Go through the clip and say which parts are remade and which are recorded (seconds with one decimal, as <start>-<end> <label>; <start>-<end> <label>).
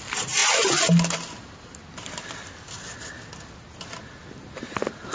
0.0-5.1 recorded